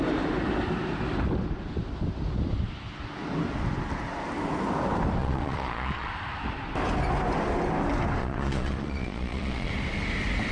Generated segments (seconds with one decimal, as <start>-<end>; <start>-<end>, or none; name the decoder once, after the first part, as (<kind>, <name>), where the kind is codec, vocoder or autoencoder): 5.2-6.1 (vocoder, Vocos); 8.2-9.7